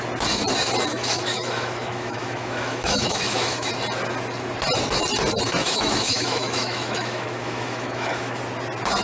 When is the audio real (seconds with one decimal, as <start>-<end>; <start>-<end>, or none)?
0.0-0.9; 3.7-5.6; 8.4-9.0